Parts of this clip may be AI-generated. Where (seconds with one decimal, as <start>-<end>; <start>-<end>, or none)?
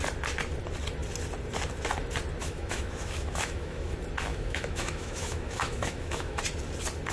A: 2.4-3.9; 4.3-6.4